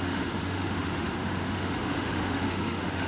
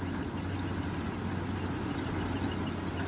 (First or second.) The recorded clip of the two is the second